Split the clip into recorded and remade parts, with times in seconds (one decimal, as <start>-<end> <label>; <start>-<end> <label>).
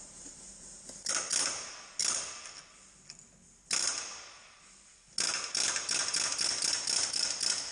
0.0-7.7 recorded